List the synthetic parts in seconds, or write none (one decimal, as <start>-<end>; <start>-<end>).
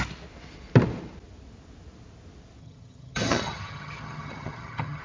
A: 2.6-5.0